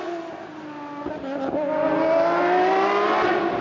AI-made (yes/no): no